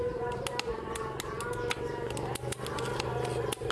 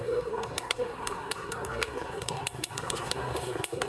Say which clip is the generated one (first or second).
second